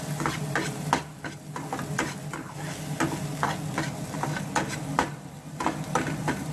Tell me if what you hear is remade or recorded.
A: recorded